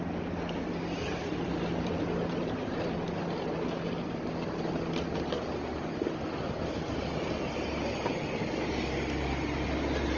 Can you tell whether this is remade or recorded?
recorded